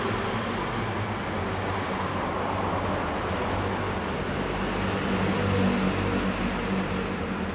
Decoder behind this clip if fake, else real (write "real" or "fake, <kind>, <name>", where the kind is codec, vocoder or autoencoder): real